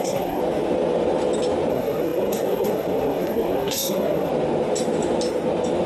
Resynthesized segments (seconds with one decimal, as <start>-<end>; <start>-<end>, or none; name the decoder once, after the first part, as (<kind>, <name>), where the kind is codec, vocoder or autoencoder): 0.0-0.4 (codec, SNAC); 1.7-4.3